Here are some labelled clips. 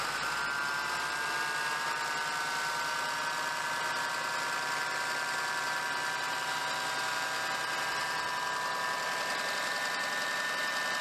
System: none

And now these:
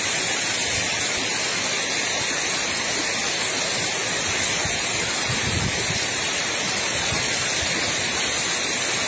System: none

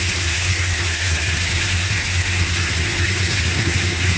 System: codec, SNAC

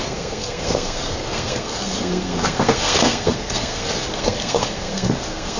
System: codec, SNAC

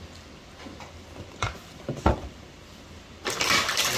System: vocoder, BigVGAN v2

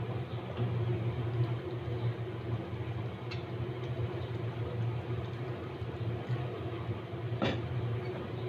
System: none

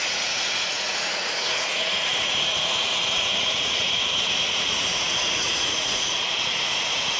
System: vocoder, Vocos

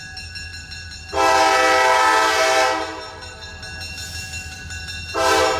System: none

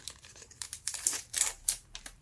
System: vocoder, BigVGAN v2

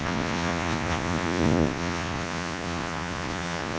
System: vocoder, Vocos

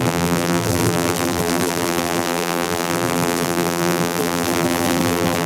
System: vocoder, BigVGAN v2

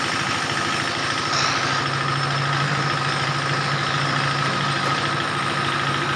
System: none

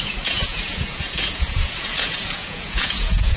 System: vocoder, Vocos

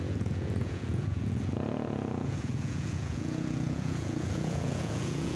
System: vocoder, Vocos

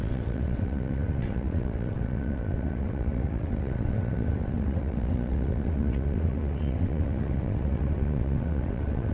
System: vocoder, WaveNeXt